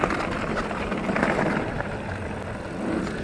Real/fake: real